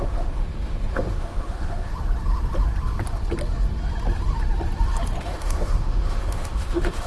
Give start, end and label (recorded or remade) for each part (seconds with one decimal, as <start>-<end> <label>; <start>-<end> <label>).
0.0-1.9 remade; 1.9-5.2 recorded; 5.2-7.1 remade